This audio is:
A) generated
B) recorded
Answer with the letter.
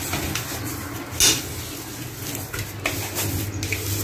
B